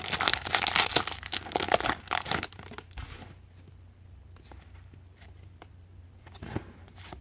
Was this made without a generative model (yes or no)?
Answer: yes